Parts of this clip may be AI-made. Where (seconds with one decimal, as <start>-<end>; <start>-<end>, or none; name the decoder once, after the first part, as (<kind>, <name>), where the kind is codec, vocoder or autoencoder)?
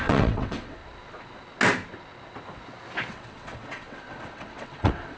0.0-0.8 (vocoder, WaveNeXt); 3.1-5.2